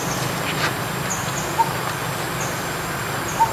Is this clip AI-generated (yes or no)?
no